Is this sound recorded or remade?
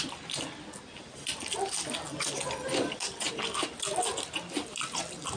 recorded